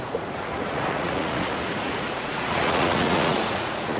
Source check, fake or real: fake